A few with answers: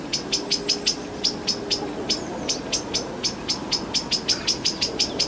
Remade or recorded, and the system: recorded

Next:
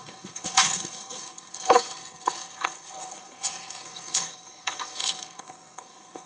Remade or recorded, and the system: remade, codec, SNAC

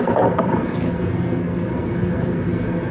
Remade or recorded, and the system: remade, codec, SNAC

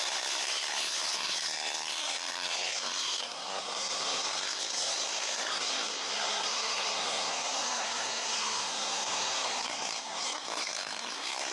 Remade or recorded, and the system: remade, codec, SNAC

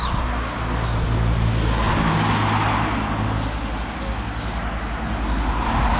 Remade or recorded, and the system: recorded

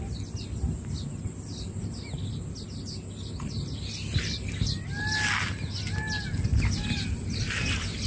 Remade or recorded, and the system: recorded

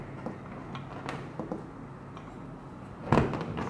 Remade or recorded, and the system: recorded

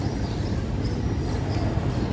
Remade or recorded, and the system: recorded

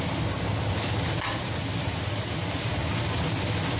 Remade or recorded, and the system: recorded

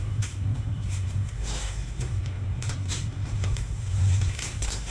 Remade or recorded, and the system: remade, codec, SNAC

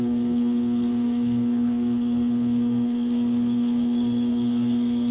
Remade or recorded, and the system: remade, codec, SNAC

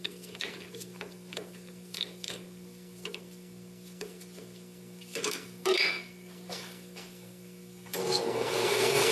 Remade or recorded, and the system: remade, codec, SNAC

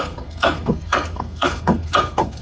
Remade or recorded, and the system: remade, codec, SNAC